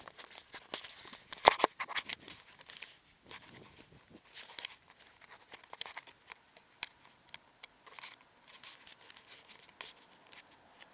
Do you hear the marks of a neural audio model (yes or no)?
no